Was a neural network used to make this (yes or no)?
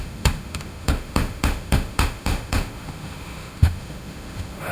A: yes